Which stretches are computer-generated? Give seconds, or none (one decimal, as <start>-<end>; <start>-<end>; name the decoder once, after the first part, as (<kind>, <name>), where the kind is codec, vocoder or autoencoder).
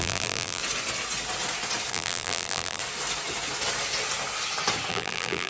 0.0-0.6 (vocoder, BigVGAN v2); 1.9-2.8; 4.9-5.5